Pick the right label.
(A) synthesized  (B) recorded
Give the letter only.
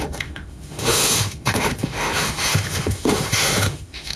A